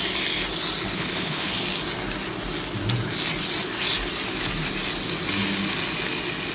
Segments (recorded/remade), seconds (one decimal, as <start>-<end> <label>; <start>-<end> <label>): 0.0-0.9 recorded; 0.9-1.5 remade; 1.5-6.5 recorded